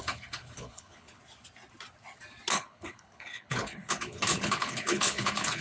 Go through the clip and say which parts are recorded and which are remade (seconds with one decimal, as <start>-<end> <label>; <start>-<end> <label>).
0.0-1.2 remade; 1.2-2.5 recorded; 2.5-5.6 remade